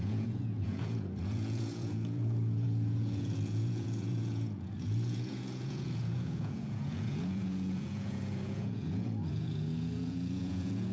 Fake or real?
fake